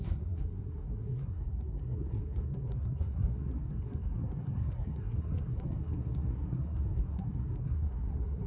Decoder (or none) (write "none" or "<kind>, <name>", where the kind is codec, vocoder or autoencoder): codec, SNAC